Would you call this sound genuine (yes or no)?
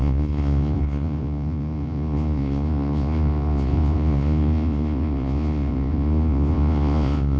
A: no